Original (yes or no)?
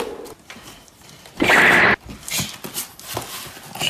yes